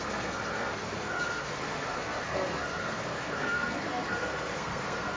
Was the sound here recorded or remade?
remade